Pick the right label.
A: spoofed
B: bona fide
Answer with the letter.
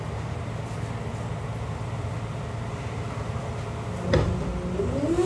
B